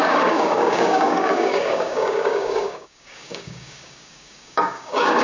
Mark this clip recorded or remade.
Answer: remade